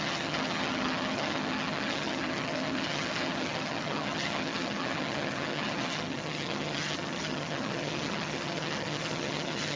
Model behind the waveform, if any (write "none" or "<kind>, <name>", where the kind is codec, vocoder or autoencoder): vocoder, HiFi-GAN